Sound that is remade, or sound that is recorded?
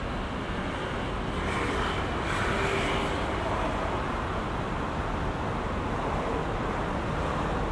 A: recorded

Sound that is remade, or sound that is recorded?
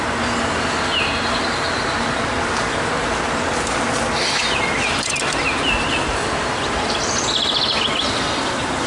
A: recorded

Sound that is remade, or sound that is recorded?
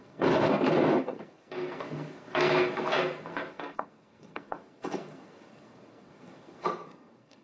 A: remade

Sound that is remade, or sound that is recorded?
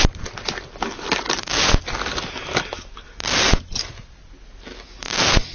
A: recorded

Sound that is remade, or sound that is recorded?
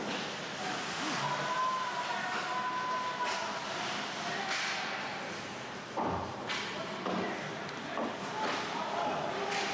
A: recorded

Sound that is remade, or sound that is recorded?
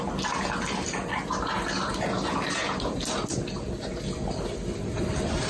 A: recorded